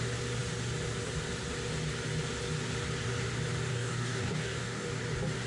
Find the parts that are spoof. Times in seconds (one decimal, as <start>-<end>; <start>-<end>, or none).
3.7-4.9